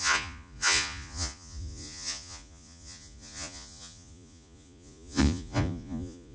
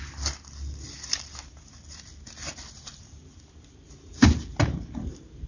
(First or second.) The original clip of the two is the second